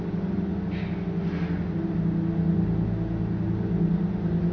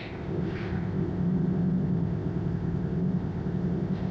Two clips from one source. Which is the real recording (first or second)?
first